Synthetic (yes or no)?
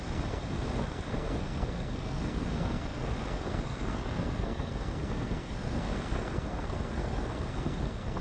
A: yes